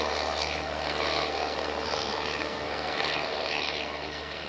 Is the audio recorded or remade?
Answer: remade